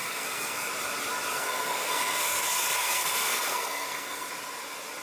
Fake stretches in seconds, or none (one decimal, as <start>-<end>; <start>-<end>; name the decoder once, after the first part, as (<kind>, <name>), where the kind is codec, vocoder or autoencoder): 0.0-0.7 (codec, SNAC); 1.3-4.3